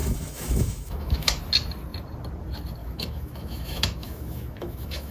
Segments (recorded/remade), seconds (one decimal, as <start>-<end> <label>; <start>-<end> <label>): 0.0-1.4 remade; 1.4-2.8 recorded; 2.8-5.1 remade